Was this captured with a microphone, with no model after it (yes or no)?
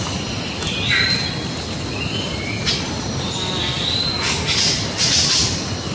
yes